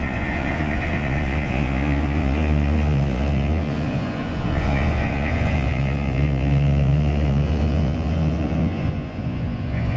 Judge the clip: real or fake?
fake